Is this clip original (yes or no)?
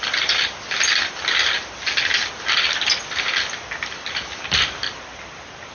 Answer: yes